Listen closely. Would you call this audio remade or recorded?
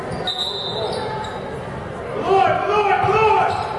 recorded